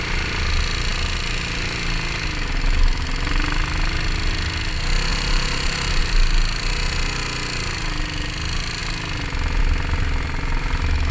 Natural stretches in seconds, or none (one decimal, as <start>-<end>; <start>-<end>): 0.0-5.1; 6.0-11.1